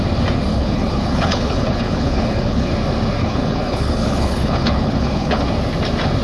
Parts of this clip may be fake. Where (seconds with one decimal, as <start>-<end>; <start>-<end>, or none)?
0.5-2.7; 3.2-5.4